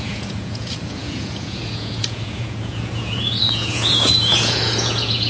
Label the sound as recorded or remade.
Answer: remade